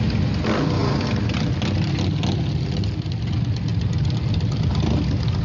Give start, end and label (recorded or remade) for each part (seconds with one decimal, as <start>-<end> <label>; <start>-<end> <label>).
0.0-5.4 recorded